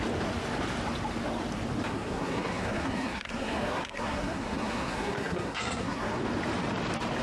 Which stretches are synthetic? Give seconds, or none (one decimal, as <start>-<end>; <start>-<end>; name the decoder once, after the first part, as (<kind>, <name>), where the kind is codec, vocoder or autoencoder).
1.9-6.2 (codec, SNAC)

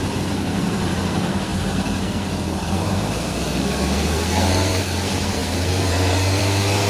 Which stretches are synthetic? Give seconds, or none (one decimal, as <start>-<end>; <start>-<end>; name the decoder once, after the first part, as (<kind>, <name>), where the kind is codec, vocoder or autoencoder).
0.0-6.9 (codec, SNAC)

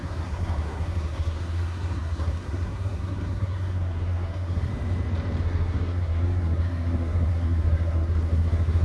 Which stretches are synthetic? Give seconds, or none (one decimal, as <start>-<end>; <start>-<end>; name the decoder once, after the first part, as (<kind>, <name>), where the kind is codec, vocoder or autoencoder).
0.0-4.7 (codec, SNAC); 5.4-8.8

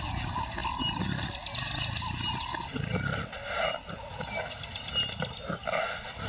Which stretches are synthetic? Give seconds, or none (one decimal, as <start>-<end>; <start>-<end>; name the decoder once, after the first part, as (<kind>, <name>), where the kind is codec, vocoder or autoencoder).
none

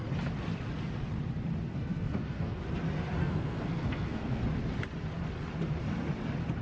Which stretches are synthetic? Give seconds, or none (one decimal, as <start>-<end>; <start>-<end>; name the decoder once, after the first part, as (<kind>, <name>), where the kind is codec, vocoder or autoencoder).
1.7-2.6 (codec, SNAC); 3.2-4.4

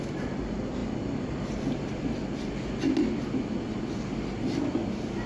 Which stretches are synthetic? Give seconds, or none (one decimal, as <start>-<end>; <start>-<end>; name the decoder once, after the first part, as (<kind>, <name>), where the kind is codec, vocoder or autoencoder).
none

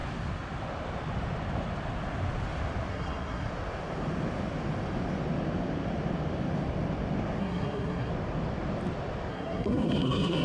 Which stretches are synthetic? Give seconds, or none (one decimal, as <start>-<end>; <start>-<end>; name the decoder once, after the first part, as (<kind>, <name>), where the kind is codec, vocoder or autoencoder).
2.9-3.5 (codec, SNAC); 7.4-8.1; 9.3-10.4